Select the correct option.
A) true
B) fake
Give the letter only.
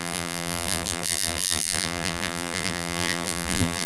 B